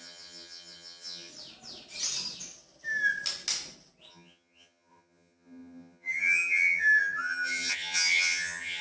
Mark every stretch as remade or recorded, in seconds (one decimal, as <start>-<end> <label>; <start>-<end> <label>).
0.0-1.3 remade; 1.3-4.1 recorded; 4.1-8.8 remade